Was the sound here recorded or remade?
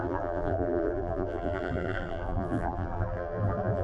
remade